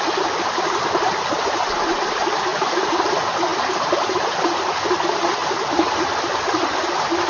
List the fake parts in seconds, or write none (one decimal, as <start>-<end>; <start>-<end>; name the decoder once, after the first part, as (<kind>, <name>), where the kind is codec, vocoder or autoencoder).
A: 2.5-3.1 (vocoder, BigVGAN v2); 3.5-4.6; 5.4-6.4